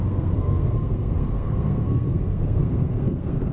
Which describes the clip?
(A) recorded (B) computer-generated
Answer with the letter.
B